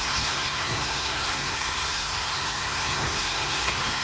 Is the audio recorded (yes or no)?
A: no